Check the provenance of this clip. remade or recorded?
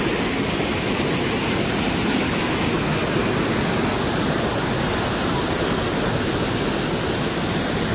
recorded